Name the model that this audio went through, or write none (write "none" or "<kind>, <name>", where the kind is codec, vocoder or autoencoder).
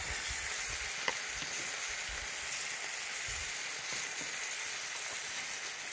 none